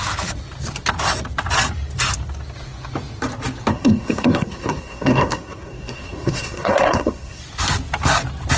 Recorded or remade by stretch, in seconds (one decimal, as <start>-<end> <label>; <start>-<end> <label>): 0.0-3.7 recorded; 3.7-7.4 remade; 7.4-8.6 recorded